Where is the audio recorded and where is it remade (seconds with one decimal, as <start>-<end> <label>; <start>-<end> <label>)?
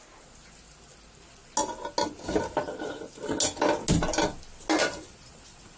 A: 0.0-5.8 recorded